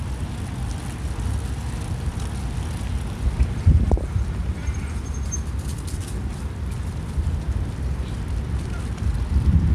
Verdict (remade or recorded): recorded